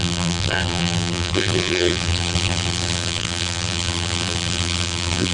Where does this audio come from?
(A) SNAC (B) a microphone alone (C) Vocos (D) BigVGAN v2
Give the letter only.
D